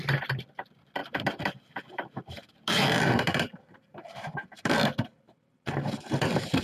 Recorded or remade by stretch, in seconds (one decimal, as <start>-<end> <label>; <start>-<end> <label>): 0.0-1.0 recorded; 1.0-4.8 remade; 4.8-6.6 recorded